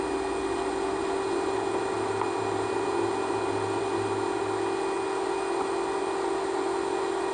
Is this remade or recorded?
recorded